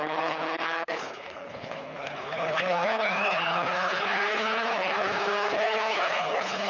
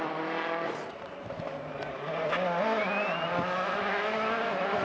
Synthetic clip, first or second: first